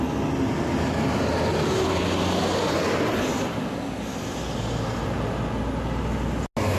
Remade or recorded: recorded